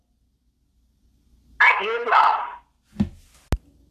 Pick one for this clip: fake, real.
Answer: real